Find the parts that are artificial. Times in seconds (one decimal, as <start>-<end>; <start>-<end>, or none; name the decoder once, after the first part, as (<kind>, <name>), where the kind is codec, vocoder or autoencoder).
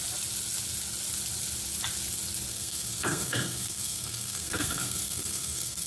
2.5-5.9 (codec, SNAC)